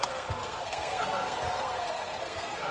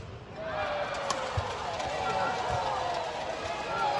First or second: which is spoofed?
first